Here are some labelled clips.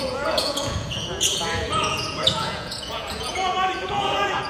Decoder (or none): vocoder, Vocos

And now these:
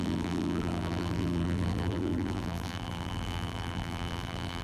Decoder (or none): vocoder, BigVGAN v2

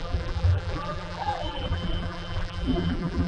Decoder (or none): vocoder, BigVGAN v2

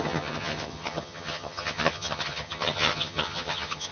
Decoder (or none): vocoder, HiFi-GAN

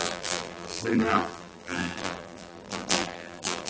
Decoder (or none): vocoder, BigVGAN v2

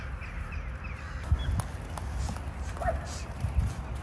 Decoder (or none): none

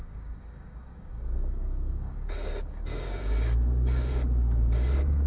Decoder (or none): codec, DAC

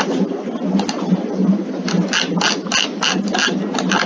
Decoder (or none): none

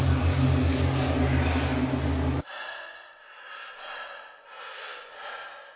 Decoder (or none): none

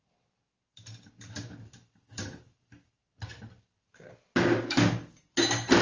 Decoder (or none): none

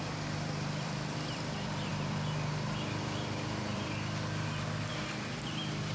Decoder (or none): vocoder, BigVGAN v2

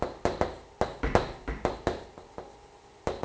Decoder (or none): none